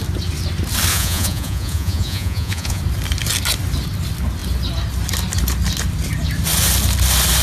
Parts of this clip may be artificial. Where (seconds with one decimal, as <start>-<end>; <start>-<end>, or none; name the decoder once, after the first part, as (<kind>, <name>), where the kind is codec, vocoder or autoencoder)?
0.9-2.8 (vocoder, Vocos)